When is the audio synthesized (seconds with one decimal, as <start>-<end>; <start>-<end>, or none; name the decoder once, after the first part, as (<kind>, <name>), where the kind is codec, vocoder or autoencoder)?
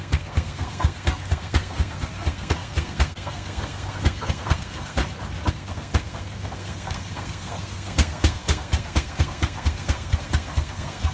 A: 0.0-5.0 (codec, SNAC); 5.5-11.1